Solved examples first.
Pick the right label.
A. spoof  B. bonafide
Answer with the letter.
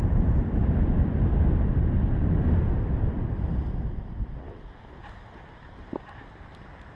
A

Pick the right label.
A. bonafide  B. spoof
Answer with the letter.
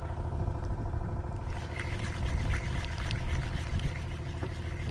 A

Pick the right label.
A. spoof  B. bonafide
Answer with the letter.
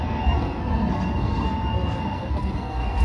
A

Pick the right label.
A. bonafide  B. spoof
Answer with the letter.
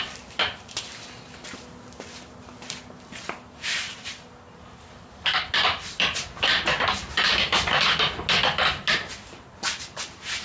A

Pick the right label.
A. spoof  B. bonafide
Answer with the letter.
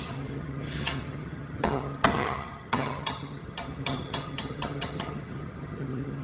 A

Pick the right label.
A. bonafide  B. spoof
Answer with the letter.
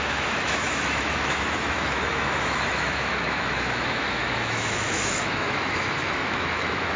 B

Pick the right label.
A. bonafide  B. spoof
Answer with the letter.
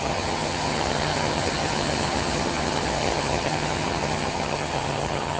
B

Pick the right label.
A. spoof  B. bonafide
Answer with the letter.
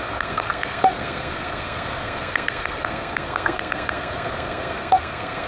A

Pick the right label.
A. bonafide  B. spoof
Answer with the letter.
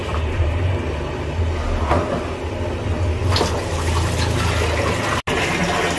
A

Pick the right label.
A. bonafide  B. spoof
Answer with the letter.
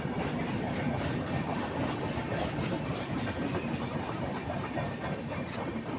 B